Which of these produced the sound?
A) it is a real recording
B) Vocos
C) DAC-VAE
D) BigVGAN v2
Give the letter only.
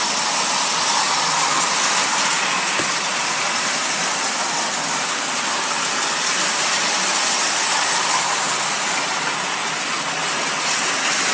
A